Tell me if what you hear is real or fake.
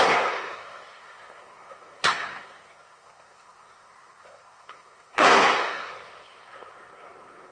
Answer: fake